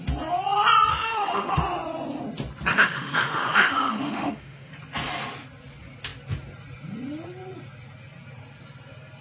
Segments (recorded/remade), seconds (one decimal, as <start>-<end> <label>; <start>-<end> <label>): 0.0-0.9 recorded; 0.9-1.6 remade; 1.6-2.7 recorded; 2.7-4.7 remade; 4.7-9.2 recorded